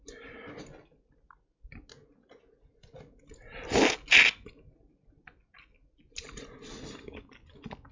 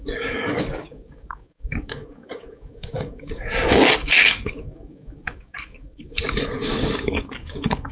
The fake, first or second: second